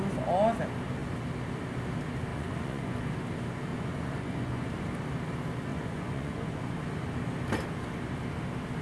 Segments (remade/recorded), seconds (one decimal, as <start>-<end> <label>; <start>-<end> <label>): 0.0-2.3 recorded; 2.3-3.0 remade; 3.0-3.7 recorded; 3.7-4.7 remade; 4.7-5.7 recorded; 5.7-6.6 remade; 6.6-8.8 recorded